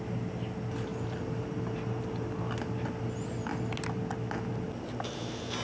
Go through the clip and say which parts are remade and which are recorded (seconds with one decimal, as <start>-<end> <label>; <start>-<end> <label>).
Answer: 0.0-5.6 recorded

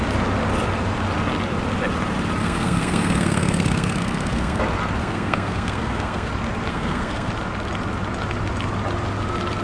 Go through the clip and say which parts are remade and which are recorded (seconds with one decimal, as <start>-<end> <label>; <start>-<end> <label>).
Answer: 0.0-2.4 recorded; 2.4-4.6 remade; 4.6-5.0 recorded; 5.0-6.3 remade; 6.3-6.7 recorded; 6.7-7.3 remade; 7.3-9.6 recorded

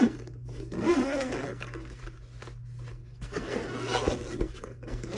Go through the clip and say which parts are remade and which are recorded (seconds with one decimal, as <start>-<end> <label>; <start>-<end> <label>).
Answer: 0.0-2.0 remade; 2.0-2.9 recorded; 2.9-5.2 remade

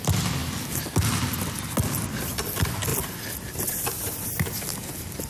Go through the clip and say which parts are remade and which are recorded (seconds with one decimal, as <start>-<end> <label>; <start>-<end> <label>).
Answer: 0.0-5.3 recorded

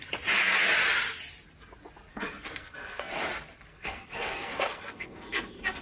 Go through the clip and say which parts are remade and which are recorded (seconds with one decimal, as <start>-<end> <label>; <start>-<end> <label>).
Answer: 0.0-2.1 recorded; 2.1-3.1 remade; 3.1-3.7 recorded; 3.7-5.8 remade

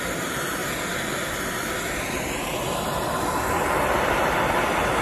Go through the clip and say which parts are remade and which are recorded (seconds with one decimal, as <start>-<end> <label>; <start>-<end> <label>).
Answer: 0.0-5.0 recorded

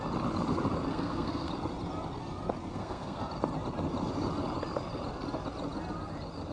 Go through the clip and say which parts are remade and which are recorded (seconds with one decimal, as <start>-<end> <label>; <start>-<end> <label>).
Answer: 0.0-0.9 recorded; 0.9-1.5 remade; 1.5-2.7 recorded; 2.7-3.2 remade; 3.2-6.5 recorded